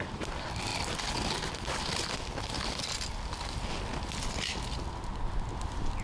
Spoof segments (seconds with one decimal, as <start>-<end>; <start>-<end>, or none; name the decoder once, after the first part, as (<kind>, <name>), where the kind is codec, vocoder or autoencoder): none